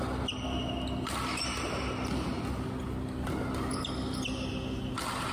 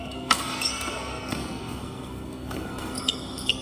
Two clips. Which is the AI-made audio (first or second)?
second